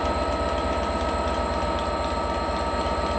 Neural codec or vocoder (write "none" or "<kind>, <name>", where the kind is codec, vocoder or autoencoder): none